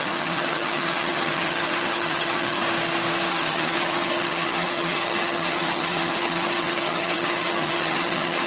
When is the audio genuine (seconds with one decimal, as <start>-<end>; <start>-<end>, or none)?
2.6-3.3